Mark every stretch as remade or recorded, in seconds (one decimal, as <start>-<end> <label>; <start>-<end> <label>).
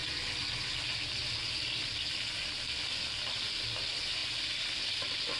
0.0-5.4 recorded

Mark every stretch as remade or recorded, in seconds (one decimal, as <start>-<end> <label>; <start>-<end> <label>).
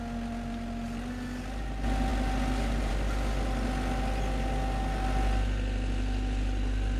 0.0-7.0 recorded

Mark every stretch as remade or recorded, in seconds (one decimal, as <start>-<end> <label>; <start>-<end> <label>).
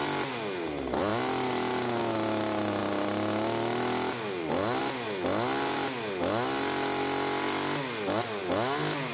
0.0-9.1 recorded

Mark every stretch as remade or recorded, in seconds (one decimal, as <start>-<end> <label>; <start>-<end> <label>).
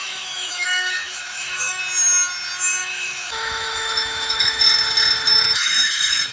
0.0-1.8 remade; 1.8-2.8 recorded; 2.8-4.6 remade; 4.6-5.3 recorded; 5.3-6.3 remade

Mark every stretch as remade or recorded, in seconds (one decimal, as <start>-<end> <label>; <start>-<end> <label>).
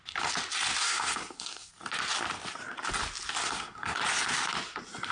0.0-0.8 recorded; 0.8-1.7 remade; 1.7-3.4 recorded; 3.4-4.0 remade; 4.0-5.1 recorded